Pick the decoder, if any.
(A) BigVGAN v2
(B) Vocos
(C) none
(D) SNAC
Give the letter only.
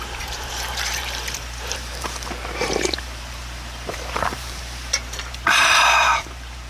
A